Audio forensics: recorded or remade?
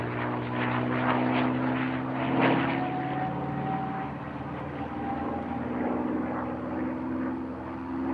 recorded